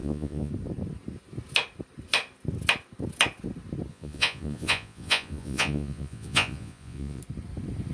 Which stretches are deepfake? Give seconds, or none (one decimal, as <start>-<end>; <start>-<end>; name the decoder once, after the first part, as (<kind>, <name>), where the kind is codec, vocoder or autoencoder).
0.0-0.5 (vocoder, Vocos); 3.9-7.2